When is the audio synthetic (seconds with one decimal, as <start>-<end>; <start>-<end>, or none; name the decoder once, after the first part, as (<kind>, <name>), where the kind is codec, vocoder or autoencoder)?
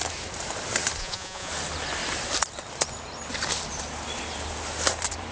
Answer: 1.0-1.5 (vocoder, Vocos)